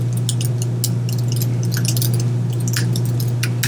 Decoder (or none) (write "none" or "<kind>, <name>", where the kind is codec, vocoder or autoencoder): none